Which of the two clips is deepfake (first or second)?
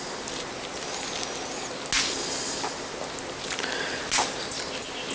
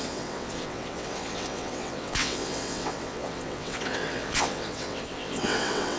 second